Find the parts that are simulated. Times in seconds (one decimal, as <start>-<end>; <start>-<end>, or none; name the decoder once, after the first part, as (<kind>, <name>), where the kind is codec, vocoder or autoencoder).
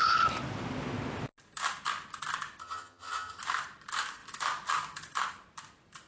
2.6-3.4 (vocoder, HiFi-GAN)